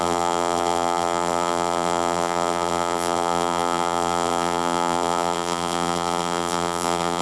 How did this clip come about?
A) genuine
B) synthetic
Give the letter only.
B